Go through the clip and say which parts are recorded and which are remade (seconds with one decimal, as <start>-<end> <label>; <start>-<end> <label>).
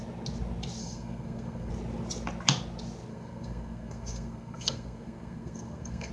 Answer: 0.0-0.8 recorded; 0.8-1.7 remade; 1.7-3.1 recorded; 3.1-6.1 remade